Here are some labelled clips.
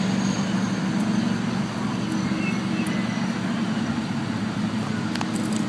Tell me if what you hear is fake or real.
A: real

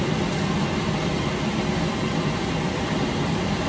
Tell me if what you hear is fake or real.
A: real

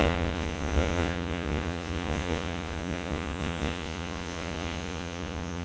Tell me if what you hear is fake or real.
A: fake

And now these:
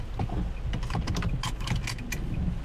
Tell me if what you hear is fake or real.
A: real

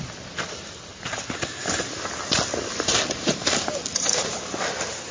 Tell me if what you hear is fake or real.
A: real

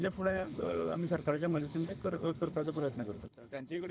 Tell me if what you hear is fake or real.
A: fake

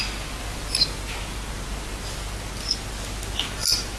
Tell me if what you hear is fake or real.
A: real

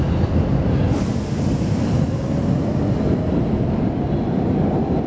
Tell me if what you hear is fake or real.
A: real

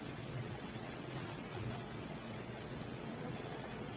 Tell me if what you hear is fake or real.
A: fake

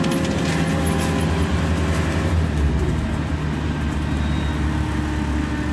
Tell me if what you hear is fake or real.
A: real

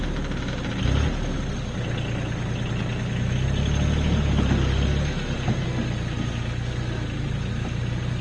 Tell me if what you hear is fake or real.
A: real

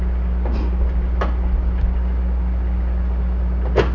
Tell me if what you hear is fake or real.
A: real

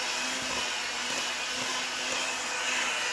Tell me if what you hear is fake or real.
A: real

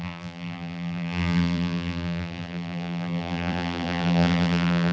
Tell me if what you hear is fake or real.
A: fake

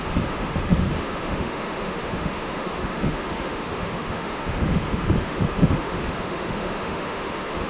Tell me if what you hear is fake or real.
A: fake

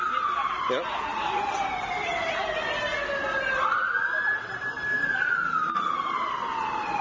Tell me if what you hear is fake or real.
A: real